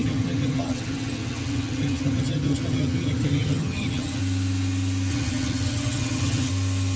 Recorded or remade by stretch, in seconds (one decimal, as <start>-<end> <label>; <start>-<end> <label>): 0.0-4.2 remade; 4.2-5.1 recorded; 5.1-6.5 remade; 6.5-7.0 recorded